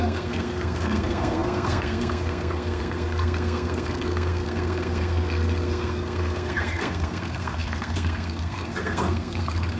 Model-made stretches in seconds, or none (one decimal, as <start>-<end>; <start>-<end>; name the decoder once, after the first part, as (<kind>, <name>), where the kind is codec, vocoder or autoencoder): 0.0-9.8 (codec, SNAC)